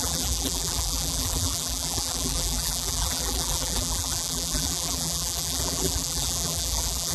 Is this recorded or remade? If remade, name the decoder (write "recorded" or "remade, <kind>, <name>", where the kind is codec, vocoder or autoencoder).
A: remade, vocoder, BigVGAN v2